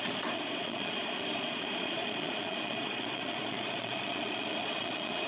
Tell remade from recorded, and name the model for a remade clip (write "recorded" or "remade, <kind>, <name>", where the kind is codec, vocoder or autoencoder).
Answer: remade, vocoder, Vocos